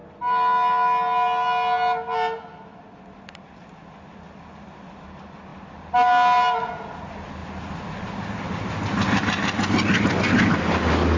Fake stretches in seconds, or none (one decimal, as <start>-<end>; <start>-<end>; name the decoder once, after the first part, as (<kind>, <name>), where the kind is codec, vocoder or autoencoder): none